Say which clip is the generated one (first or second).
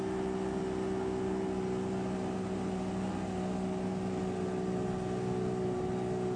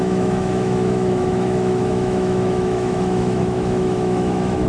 second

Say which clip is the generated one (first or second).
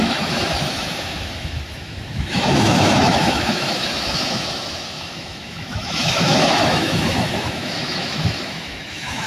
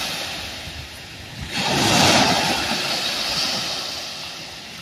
first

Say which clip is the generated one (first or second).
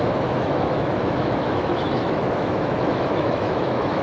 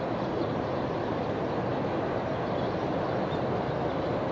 first